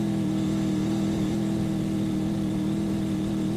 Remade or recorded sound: recorded